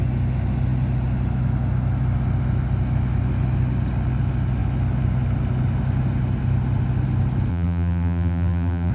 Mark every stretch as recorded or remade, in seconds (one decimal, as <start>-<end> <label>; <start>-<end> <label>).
0.0-7.5 recorded; 7.5-8.9 remade